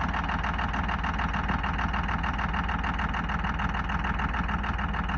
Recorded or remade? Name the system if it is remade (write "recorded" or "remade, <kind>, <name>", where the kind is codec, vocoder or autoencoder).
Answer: recorded